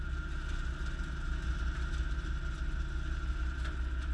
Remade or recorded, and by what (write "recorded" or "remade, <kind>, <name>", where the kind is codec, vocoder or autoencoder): recorded